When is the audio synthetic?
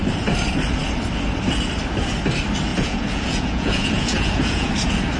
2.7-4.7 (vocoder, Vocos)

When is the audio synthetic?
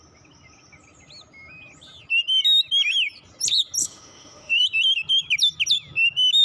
3.8-4.6 (autoencoder, DAC-VAE)